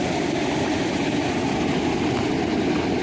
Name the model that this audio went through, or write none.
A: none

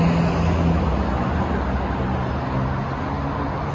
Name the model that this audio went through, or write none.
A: none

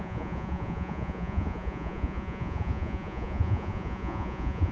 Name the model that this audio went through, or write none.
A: vocoder, Vocos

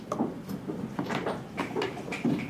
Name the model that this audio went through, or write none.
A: none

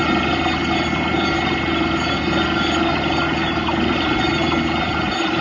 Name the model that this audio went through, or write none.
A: none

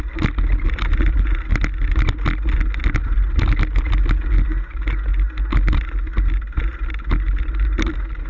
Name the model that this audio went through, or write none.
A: none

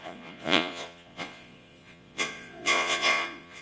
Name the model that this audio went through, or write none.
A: vocoder, Vocos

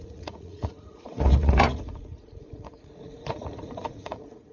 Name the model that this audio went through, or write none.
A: vocoder, Vocos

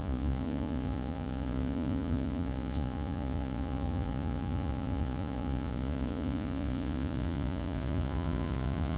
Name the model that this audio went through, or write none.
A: vocoder, Vocos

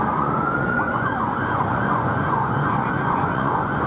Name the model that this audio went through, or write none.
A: vocoder, Vocos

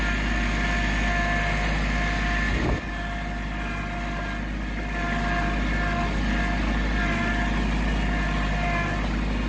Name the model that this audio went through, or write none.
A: none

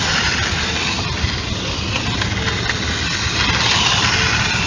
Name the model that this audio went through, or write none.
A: none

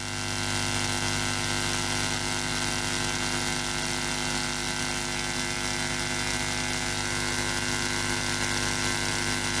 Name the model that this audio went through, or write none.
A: none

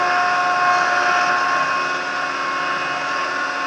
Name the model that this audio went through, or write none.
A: none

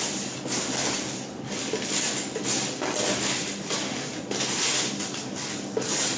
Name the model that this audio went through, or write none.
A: none